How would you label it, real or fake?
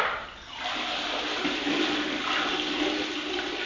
real